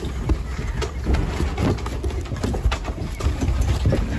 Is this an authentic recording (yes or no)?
yes